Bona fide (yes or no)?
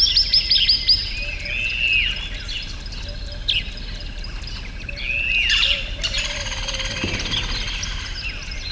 yes